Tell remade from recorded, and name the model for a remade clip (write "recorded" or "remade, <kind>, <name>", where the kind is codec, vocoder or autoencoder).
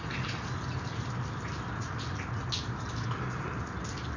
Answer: recorded